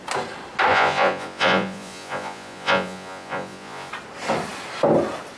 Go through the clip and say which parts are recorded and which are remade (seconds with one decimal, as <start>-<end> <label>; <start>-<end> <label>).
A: 0.0-0.7 recorded; 0.7-3.9 remade; 3.9-5.4 recorded